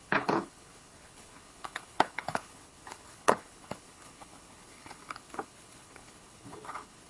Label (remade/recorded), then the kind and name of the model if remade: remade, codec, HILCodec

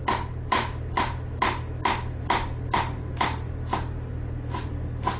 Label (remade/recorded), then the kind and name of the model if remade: recorded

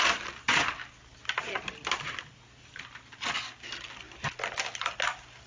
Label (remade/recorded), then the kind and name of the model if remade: recorded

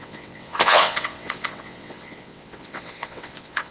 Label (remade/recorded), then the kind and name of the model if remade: remade, vocoder, WaveNeXt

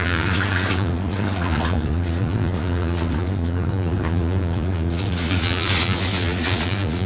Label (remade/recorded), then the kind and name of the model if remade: remade, vocoder, Vocos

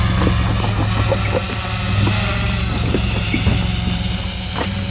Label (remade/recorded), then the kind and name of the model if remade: recorded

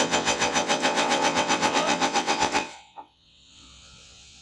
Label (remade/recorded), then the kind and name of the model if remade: remade, vocoder, WaveNeXt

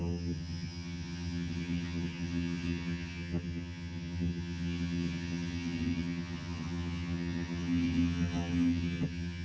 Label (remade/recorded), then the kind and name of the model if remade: remade, vocoder, HiFi-GAN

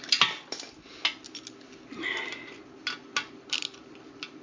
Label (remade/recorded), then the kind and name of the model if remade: recorded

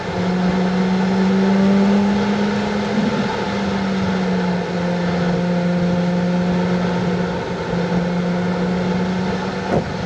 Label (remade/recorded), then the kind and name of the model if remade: recorded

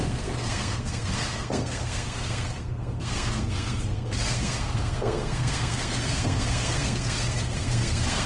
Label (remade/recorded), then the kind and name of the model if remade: remade, codec, SNAC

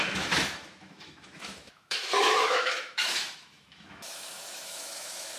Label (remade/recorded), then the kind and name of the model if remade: remade, autoencoder, DAC-VAE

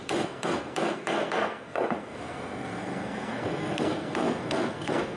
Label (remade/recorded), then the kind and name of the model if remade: remade, codec, SNAC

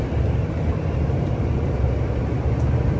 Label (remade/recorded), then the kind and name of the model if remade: remade, vocoder, BigVGAN v2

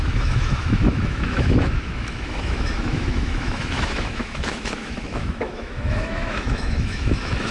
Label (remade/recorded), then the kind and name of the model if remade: remade, autoencoder, DAC-VAE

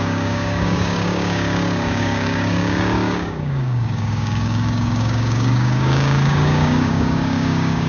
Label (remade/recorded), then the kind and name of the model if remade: remade, codec, DAC